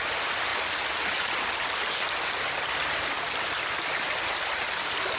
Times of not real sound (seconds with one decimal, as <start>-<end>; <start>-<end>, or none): none